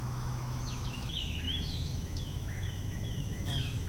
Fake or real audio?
fake